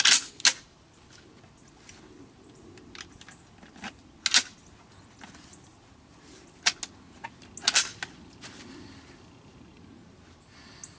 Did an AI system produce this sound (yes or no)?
no